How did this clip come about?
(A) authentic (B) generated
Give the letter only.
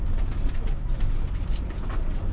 A